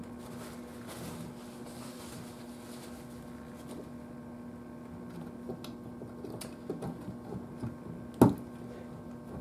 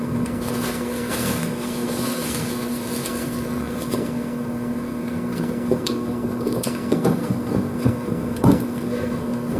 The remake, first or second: second